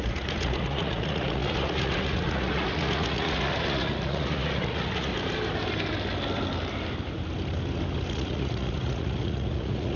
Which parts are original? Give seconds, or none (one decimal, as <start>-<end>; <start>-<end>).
5.1-8.1